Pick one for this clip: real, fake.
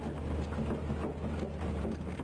real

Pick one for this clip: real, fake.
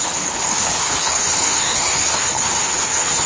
fake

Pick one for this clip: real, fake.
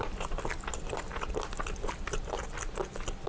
real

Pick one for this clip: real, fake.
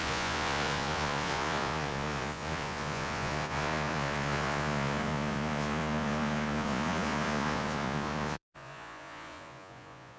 fake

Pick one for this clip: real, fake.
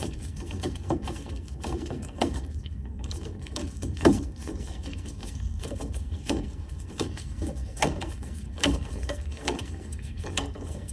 fake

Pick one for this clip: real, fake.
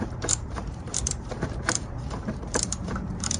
fake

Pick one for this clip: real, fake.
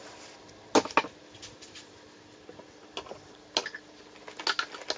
real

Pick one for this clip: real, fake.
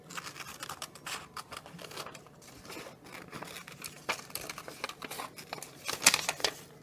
real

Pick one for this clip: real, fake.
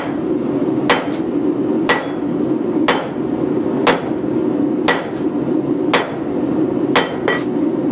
real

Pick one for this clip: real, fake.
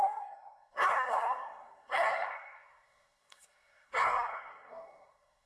fake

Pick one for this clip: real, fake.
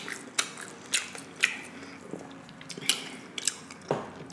real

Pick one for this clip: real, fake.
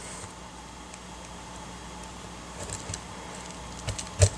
real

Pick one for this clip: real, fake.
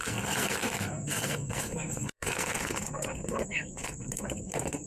fake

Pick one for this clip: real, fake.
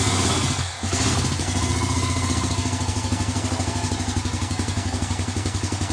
fake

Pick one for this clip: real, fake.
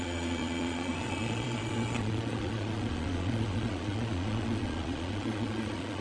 fake